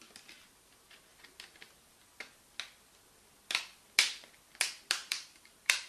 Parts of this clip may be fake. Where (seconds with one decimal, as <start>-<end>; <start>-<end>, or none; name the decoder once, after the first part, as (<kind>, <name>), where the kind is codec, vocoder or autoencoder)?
5.0-5.9 (vocoder, BigVGAN v2)